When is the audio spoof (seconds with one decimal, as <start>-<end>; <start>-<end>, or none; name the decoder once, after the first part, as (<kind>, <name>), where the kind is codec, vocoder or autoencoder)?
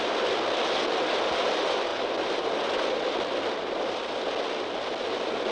none